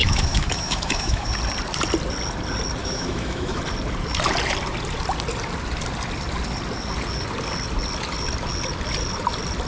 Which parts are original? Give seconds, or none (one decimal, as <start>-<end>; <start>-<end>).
1.3-2.8; 3.6-9.7

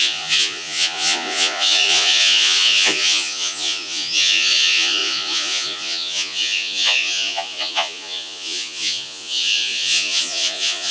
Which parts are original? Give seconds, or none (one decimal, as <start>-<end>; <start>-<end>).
none

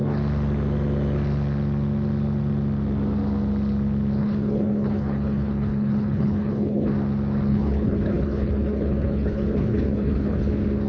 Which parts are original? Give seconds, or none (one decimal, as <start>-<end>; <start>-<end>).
0.0-4.2; 6.9-7.5; 10.5-10.9

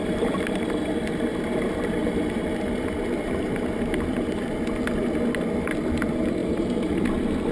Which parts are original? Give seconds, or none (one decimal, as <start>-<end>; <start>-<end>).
0.9-1.3; 4.6-6.4; 7.1-7.5

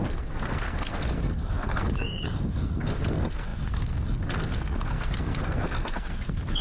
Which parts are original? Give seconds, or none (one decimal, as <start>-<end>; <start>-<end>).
none